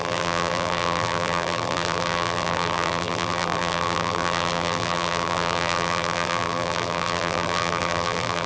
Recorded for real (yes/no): no